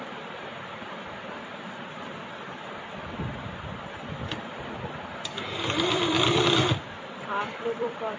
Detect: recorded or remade remade